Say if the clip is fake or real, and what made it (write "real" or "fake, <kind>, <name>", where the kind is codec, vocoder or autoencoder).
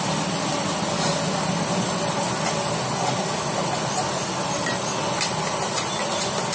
real